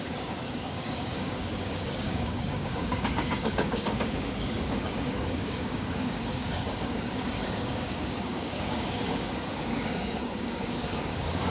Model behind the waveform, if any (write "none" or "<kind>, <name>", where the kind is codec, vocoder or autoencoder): codec, DAC